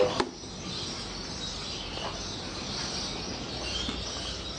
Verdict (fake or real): real